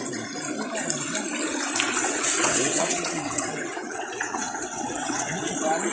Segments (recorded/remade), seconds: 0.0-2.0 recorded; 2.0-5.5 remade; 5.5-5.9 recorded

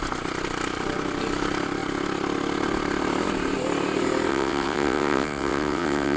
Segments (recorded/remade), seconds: 0.0-4.3 recorded; 4.3-6.2 remade

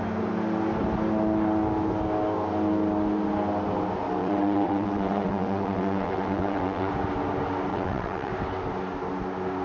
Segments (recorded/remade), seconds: 0.0-4.2 recorded; 4.2-6.9 remade; 6.9-7.7 recorded; 7.7-8.3 remade; 8.3-9.6 recorded

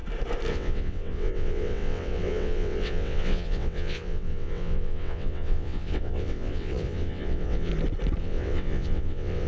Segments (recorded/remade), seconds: 0.0-0.5 recorded; 0.5-7.7 remade; 7.7-8.2 recorded; 8.2-9.5 remade

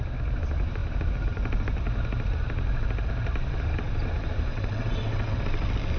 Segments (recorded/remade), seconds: 0.0-4.5 recorded; 4.5-5.4 remade; 5.4-6.0 recorded

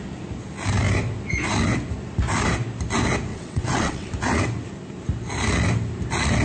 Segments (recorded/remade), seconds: 0.0-3.3 recorded; 3.3-4.1 remade; 4.1-6.4 recorded